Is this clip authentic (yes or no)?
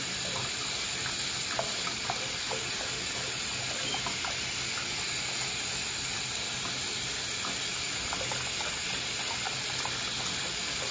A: yes